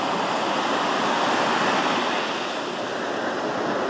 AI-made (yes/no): no